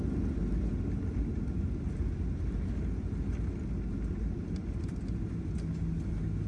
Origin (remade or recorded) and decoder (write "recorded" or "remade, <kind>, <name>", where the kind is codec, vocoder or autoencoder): recorded